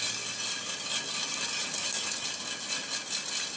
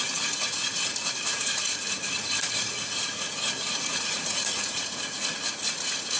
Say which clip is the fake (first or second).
second